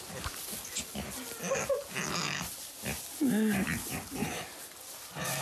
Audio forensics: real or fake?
real